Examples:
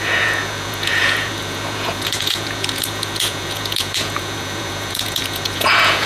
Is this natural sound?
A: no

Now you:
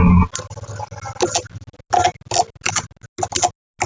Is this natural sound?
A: yes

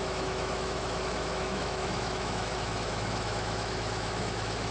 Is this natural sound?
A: no